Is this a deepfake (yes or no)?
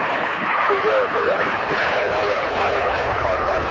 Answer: yes